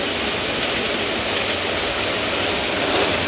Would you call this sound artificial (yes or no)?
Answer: no